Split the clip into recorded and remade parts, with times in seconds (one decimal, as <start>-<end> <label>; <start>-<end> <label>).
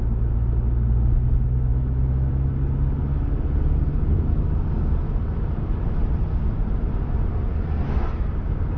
0.0-1.7 recorded; 1.7-2.3 remade; 2.3-8.8 recorded